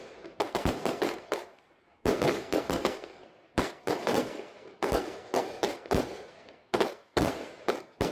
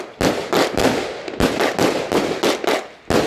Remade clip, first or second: first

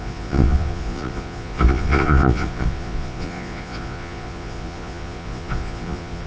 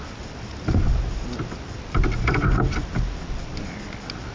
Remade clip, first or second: first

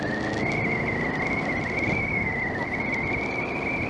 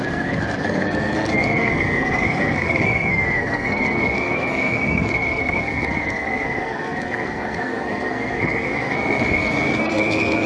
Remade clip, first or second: second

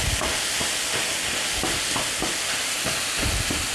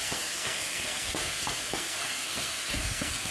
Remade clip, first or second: second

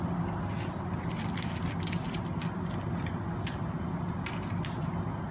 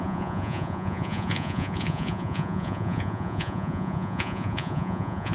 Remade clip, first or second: second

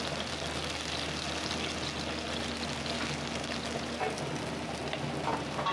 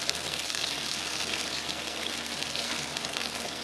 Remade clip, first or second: second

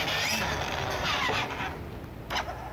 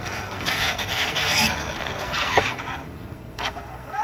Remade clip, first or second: second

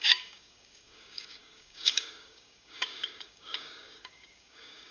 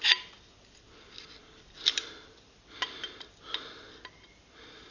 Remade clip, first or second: first